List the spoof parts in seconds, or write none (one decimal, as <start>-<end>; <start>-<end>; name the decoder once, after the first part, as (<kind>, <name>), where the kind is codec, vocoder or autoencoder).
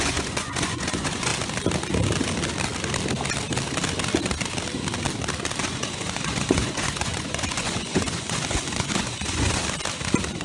0.0-1.3 (vocoder, Vocos); 5.6-9.6